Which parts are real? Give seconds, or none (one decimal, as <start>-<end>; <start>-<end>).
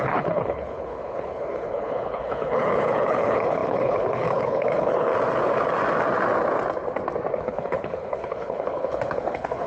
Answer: 5.1-7.4